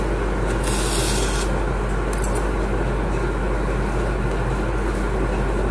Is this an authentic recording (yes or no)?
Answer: yes